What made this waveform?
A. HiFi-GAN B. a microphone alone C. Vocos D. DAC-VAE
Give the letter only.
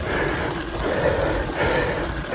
B